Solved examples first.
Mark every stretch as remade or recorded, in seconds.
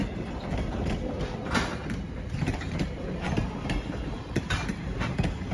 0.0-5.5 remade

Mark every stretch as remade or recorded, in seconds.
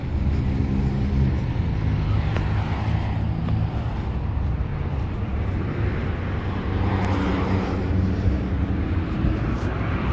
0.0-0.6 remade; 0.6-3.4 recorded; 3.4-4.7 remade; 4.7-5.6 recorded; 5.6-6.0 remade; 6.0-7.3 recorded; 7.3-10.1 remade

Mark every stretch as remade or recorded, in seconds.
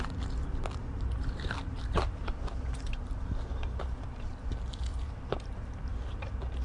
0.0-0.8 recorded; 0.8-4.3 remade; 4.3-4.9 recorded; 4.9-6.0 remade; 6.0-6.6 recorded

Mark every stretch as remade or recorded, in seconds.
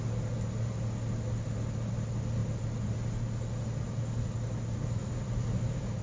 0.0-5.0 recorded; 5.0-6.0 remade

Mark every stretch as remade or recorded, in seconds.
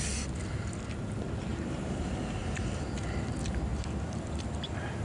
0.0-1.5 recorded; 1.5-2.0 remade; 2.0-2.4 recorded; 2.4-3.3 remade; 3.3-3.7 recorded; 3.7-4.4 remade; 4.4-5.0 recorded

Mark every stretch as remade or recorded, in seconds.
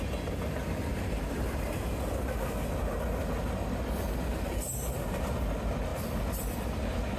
0.0-7.2 recorded